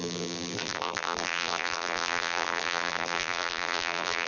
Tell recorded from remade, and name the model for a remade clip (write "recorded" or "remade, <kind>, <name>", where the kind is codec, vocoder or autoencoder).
remade, vocoder, BigVGAN v2